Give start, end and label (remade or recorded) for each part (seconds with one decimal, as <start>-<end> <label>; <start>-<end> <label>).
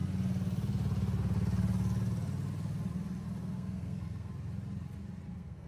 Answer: 0.0-3.4 recorded; 3.4-4.3 remade; 4.3-5.3 recorded; 5.3-5.7 remade